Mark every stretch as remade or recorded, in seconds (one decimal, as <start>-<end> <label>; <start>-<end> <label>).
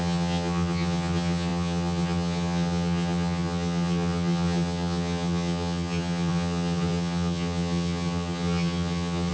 0.0-9.3 remade